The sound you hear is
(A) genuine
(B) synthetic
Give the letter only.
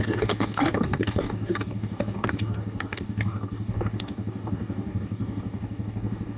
B